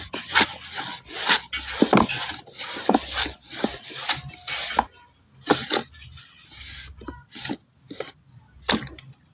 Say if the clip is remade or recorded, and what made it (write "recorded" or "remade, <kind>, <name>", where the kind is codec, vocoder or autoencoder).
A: recorded